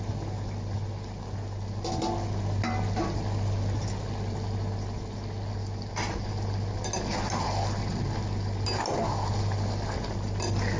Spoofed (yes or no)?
no